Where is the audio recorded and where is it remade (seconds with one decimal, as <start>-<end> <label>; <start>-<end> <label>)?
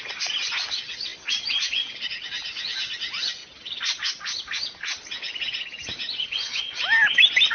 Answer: 0.0-7.5 recorded